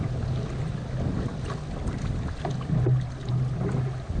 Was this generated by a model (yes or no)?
no